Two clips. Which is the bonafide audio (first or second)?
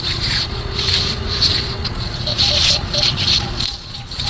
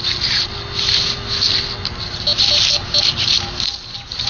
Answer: second